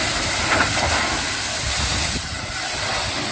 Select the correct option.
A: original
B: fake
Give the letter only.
A